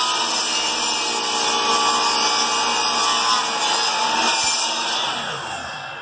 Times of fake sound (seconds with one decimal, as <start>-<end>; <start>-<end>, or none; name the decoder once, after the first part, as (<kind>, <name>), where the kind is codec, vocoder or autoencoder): none